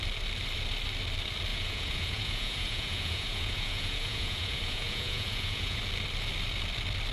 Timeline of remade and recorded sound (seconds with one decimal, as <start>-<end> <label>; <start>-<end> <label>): 0.0-1.5 recorded; 1.5-5.8 remade; 5.8-7.1 recorded